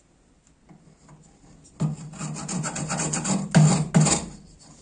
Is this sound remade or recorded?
recorded